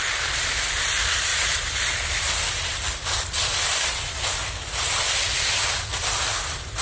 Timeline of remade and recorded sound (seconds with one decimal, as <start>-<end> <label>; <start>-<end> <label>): 0.0-6.8 recorded